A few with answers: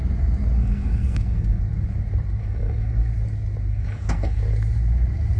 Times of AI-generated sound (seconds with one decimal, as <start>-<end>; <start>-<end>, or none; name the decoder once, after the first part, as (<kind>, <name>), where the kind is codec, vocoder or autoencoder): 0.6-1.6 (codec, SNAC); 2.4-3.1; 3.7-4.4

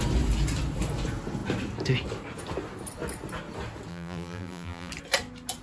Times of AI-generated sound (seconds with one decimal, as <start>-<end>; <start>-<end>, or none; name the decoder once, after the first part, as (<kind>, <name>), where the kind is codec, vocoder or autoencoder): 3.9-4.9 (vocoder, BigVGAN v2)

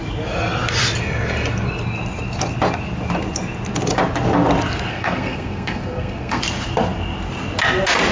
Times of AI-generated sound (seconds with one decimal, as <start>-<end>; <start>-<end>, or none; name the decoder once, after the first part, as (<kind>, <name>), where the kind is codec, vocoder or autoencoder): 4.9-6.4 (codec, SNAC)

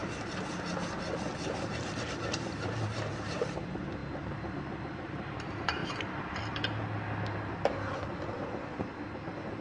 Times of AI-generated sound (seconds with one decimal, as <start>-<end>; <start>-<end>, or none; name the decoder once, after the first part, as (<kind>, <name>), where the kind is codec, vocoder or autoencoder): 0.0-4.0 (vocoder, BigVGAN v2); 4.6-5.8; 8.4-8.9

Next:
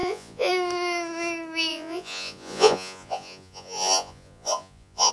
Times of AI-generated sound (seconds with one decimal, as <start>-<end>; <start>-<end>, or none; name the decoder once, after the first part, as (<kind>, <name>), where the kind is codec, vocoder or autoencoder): 0.0-0.5 (vocoder, Vocos); 1.7-5.1